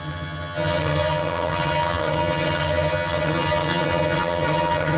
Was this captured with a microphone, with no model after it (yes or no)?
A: no